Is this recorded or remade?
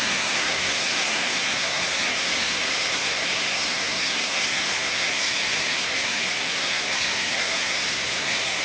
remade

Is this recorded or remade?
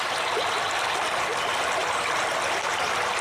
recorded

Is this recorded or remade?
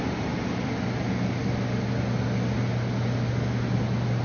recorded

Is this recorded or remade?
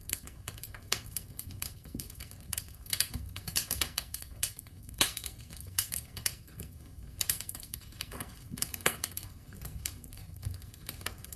remade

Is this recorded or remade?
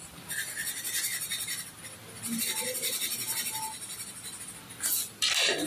recorded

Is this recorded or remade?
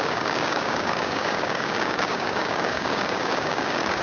remade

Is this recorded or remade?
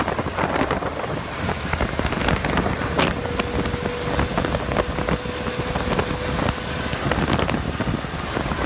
recorded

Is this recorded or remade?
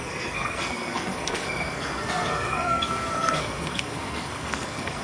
remade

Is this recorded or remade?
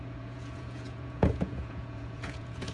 remade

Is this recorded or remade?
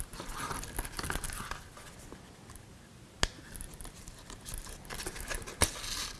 recorded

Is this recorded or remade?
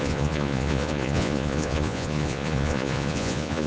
remade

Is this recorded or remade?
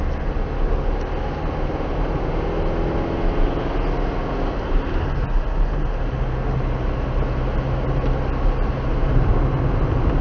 recorded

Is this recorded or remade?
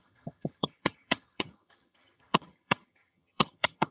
remade